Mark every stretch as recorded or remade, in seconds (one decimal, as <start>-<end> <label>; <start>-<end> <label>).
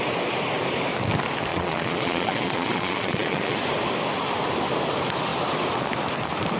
0.0-1.5 recorded; 1.5-3.6 remade; 3.6-6.6 recorded